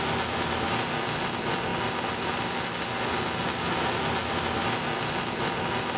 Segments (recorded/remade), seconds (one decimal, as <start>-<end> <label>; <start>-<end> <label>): 0.0-6.0 recorded